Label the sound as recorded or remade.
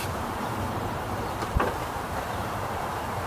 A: remade